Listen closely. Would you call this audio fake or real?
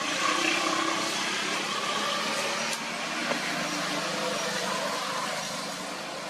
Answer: real